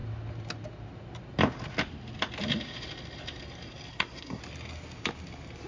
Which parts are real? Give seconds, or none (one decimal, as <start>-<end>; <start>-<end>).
0.0-3.9; 4.4-5.7